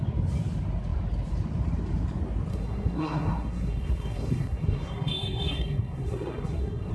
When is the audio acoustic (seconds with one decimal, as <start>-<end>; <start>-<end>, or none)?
0.0-2.5

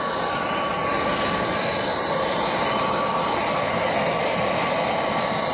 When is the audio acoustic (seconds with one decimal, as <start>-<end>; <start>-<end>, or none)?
0.0-5.5

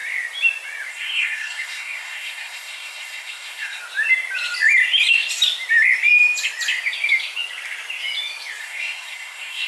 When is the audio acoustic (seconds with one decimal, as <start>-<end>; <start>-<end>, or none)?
0.0-0.9; 3.8-8.6

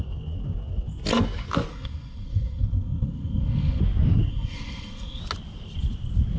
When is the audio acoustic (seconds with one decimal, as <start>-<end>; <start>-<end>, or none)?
0.0-1.7; 3.8-4.3; 5.2-6.4

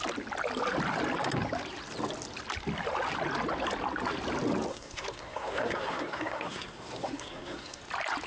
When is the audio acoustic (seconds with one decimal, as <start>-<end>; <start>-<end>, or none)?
0.0-4.7; 7.8-8.3